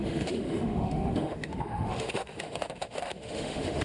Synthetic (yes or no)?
yes